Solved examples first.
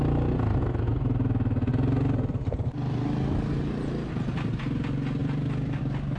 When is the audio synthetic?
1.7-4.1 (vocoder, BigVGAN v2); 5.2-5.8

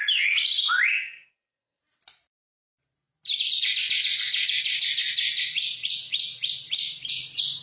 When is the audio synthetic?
0.9-1.8 (codec, SNAC)